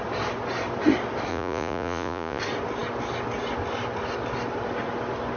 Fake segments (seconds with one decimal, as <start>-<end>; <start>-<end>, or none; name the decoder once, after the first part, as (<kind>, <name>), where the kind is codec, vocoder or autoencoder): 1.3-2.4 (vocoder, Vocos)